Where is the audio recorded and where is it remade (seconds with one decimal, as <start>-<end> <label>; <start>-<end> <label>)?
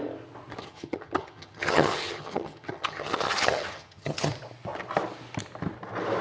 0.0-0.6 recorded; 0.6-4.3 remade; 4.3-6.2 recorded